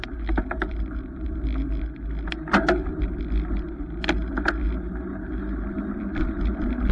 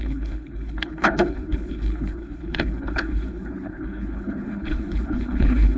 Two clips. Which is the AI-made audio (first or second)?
second